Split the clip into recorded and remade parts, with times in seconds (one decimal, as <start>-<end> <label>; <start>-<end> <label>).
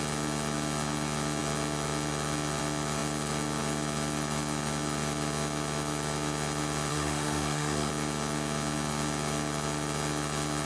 0.0-6.9 recorded; 6.9-7.9 remade; 7.9-10.7 recorded